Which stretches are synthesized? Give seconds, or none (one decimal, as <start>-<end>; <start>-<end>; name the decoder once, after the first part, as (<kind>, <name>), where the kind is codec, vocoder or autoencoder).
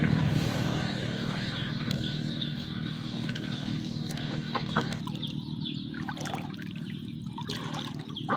0.0-5.0 (codec, DAC)